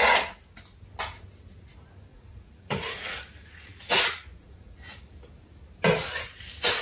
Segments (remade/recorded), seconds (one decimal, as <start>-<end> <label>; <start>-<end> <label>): 0.0-2.1 recorded; 2.1-5.1 remade; 5.1-6.8 recorded